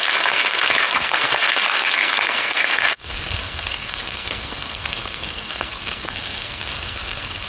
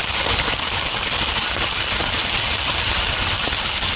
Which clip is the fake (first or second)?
first